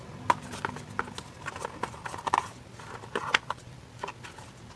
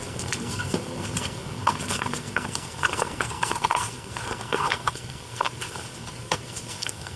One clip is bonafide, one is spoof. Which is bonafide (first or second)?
first